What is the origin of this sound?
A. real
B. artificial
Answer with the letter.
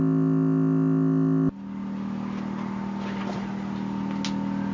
A